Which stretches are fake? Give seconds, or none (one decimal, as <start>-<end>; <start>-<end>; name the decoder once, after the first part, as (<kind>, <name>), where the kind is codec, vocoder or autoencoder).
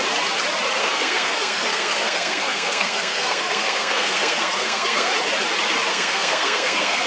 0.8-5.1 (codec, SNAC); 5.9-7.1